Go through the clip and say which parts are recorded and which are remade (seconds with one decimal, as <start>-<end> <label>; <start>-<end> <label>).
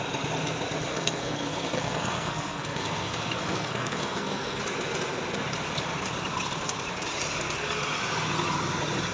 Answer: 0.0-0.9 recorded; 0.9-4.6 remade; 4.6-9.1 recorded